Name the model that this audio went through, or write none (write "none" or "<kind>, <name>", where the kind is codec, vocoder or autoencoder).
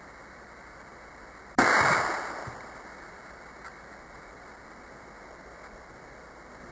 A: none